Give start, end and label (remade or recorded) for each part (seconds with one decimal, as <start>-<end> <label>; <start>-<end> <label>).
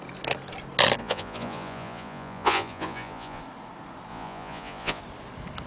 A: 0.0-1.0 recorded; 1.0-3.4 remade; 3.4-4.1 recorded; 4.1-5.0 remade; 5.0-5.7 recorded